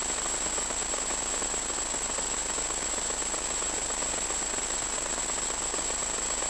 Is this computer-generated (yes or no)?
no